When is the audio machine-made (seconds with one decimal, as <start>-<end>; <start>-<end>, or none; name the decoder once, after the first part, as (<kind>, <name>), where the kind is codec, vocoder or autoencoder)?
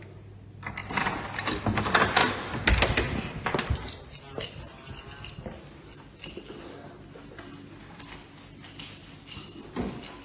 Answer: none